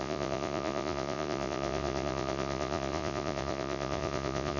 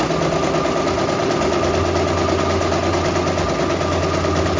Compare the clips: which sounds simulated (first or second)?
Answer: first